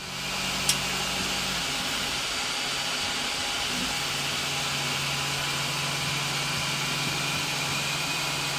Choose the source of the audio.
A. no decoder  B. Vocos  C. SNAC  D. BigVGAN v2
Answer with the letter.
A